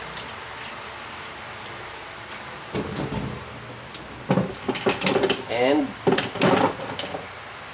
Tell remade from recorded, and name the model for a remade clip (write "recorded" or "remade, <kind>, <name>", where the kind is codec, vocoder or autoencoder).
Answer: remade, vocoder, BigVGAN v2